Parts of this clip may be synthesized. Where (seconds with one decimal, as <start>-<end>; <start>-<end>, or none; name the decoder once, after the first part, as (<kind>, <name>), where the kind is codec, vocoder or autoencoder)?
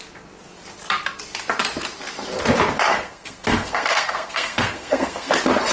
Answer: 2.9-5.3 (codec, SNAC)